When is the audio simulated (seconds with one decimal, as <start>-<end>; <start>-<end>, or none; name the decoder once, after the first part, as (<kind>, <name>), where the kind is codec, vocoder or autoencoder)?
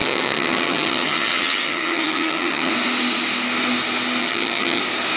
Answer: 0.0-2.7 (vocoder, HiFi-GAN); 4.2-4.8